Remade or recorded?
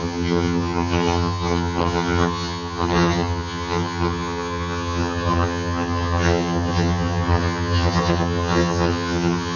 remade